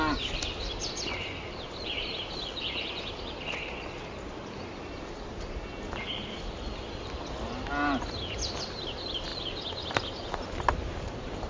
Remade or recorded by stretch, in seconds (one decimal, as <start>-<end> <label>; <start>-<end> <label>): 0.0-11.5 recorded